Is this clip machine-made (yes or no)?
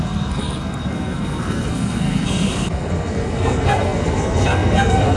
yes